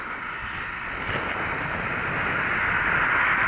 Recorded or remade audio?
recorded